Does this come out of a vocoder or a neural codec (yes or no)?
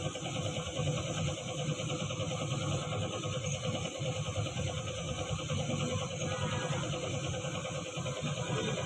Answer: no